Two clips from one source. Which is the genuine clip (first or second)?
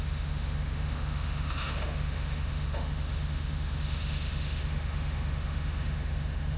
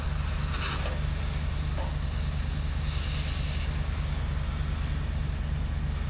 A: second